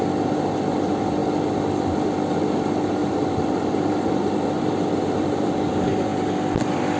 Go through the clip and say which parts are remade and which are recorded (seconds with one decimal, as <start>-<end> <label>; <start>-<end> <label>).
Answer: 0.0-3.0 recorded; 3.0-5.4 remade; 5.4-7.0 recorded